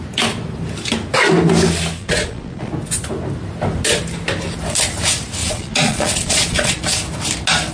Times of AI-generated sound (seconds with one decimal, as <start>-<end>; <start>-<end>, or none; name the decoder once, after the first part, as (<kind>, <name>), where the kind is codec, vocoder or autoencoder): 2.0-2.7 (vocoder, Vocos); 5.4-6.8